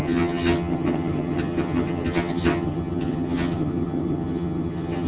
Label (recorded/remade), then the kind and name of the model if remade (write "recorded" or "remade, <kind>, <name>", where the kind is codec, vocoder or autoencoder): remade, vocoder, HiFi-GAN